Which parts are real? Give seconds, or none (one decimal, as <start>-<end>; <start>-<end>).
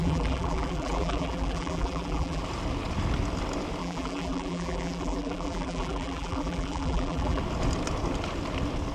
2.4-3.8; 7.4-8.9